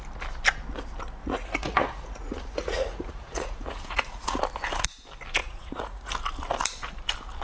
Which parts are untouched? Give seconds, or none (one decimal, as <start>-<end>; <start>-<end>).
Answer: 0.0-1.2; 4.4-5.4; 6.1-7.4